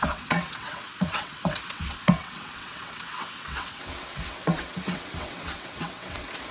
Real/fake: fake